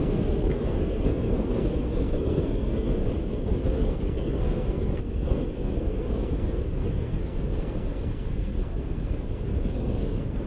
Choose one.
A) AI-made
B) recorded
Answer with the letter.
A